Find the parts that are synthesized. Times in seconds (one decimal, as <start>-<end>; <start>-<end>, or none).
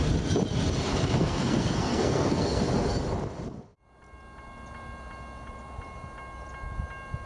0.9-2.6